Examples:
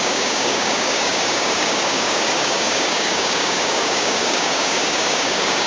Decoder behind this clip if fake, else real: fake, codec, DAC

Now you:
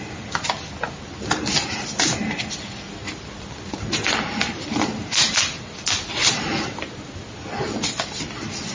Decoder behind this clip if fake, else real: real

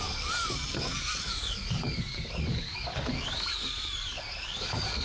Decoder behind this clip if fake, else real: fake, codec, DAC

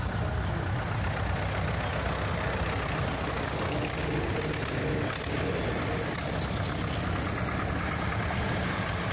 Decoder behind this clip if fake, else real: real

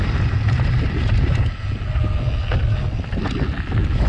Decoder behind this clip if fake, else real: real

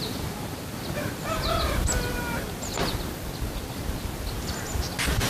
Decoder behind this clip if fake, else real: real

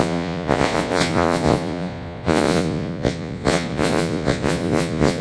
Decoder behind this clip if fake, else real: fake, vocoder, Vocos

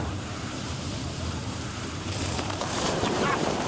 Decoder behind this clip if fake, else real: fake, vocoder, BigVGAN v2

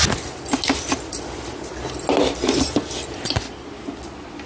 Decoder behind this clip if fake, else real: real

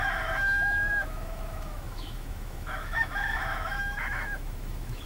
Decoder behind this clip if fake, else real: fake, autoencoder, DAC-VAE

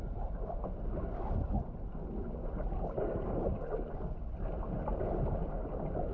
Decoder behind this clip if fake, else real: real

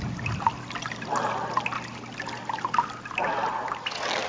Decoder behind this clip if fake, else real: real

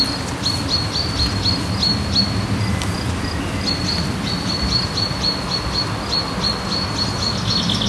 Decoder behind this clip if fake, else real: real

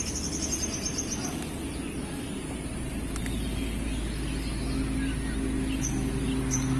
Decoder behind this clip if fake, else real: real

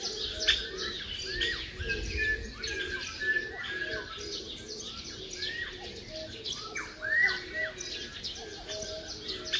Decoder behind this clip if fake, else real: real